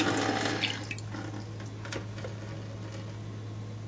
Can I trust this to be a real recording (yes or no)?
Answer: yes